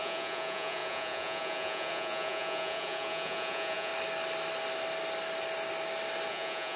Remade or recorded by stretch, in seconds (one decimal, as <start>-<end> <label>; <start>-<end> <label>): 0.0-3.9 remade; 3.9-6.3 recorded; 6.3-6.8 remade